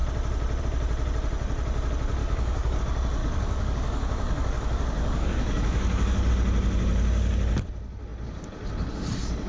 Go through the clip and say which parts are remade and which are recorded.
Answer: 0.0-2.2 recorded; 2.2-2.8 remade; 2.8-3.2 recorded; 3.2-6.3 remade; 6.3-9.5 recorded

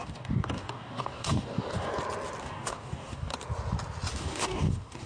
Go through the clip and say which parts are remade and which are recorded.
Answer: 0.0-1.9 remade; 1.9-2.4 recorded; 2.4-3.3 remade; 3.3-4.1 recorded; 4.1-5.1 remade

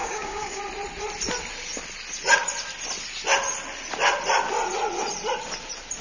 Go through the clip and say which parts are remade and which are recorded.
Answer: 0.0-0.6 remade; 0.6-6.0 recorded

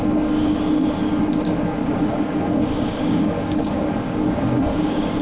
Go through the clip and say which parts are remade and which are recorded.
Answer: 0.0-1.8 recorded; 1.8-5.2 remade

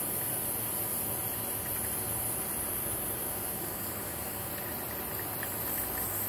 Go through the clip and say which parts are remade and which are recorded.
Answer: 0.0-3.2 recorded; 3.2-4.5 remade; 4.5-6.3 recorded